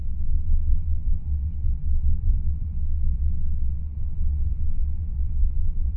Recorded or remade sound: remade